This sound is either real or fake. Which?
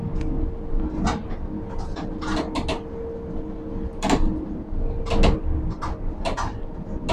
real